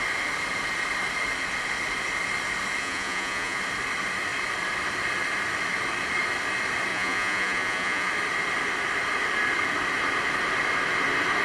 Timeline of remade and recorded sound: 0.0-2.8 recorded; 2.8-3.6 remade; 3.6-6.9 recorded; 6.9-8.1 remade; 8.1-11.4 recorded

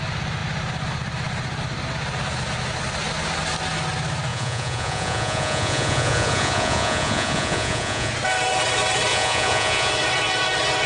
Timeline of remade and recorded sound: 0.0-4.3 recorded; 4.3-8.1 remade; 8.1-9.1 recorded; 9.1-9.9 remade; 9.9-10.9 recorded